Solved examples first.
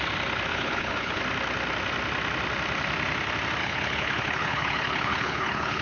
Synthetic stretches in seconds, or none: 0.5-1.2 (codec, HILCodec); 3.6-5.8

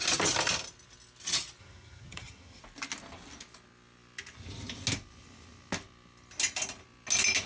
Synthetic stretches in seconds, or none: 1.6-2.6 (vocoder, HiFi-GAN)

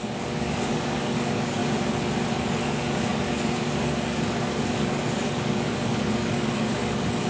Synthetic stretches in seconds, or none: 0.0-1.6 (codec, DAC); 2.3-7.3

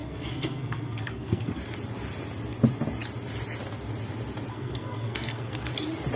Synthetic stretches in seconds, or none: 0.0-1.6 (codec, SNAC); 4.5-5.7